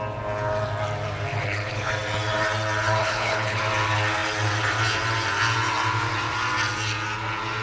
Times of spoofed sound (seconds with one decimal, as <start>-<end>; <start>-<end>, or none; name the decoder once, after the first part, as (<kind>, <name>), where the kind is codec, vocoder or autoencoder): 1.3-1.9 (codec, HILCodec); 3.0-3.6